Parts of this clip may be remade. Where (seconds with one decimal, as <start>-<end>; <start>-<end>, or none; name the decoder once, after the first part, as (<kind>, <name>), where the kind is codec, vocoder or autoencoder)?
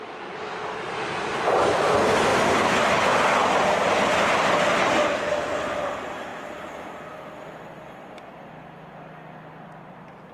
none